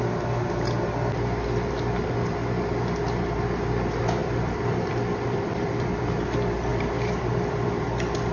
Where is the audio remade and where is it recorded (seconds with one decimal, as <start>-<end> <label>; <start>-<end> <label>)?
0.0-4.2 recorded; 4.2-6.0 remade; 6.0-6.7 recorded; 6.7-7.7 remade; 7.7-8.3 recorded